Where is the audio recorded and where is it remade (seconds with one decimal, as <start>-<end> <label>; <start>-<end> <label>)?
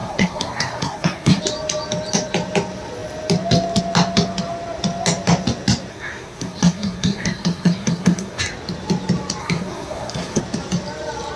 0.0-1.4 remade; 1.4-5.9 recorded; 5.9-8.4 remade; 8.4-9.4 recorded; 9.4-10.4 remade; 10.4-11.4 recorded